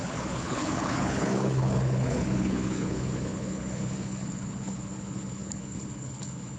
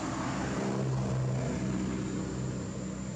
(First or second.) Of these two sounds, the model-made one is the first